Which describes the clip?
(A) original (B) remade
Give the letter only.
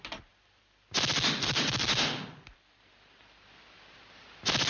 A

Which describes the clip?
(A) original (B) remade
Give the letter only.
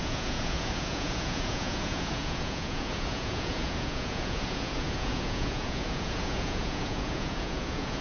B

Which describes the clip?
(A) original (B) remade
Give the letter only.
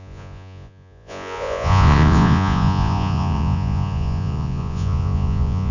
B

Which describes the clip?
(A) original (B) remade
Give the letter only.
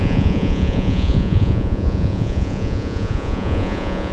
B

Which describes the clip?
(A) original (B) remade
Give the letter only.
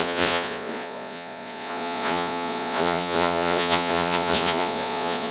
B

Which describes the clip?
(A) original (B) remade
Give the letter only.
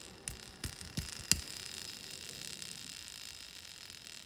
A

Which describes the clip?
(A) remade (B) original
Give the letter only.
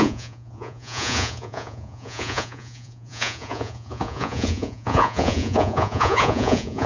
A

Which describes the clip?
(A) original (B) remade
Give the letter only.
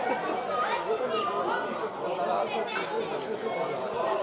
A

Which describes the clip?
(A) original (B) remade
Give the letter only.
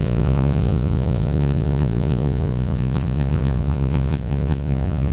B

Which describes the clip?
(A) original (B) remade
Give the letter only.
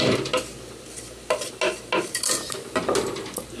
A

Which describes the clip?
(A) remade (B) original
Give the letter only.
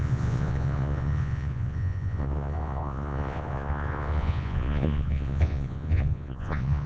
A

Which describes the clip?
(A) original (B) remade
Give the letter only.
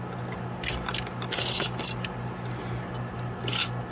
A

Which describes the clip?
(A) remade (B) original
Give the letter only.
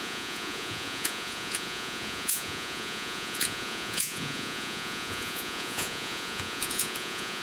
A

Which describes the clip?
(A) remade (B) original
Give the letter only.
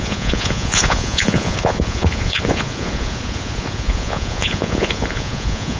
A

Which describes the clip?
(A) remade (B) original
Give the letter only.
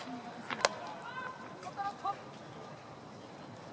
B